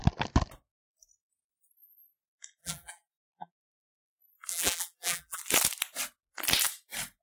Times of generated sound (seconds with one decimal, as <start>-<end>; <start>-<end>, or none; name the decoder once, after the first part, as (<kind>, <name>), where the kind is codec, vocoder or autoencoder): 2.6-3.5 (vocoder, BigVGAN v2); 4.5-5.4